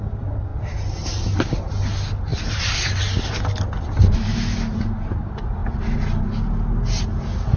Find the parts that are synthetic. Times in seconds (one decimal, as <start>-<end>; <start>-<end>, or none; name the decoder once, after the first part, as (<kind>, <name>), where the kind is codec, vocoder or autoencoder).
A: 0.5-1.7 (vocoder, BigVGAN v2); 2.3-3.0